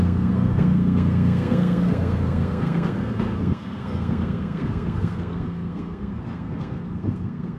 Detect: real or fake fake